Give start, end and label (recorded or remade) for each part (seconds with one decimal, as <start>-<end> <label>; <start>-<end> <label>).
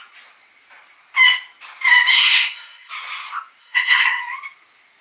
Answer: 0.0-2.1 recorded; 2.1-2.9 remade; 2.9-3.6 recorded; 3.6-4.2 remade; 4.2-5.0 recorded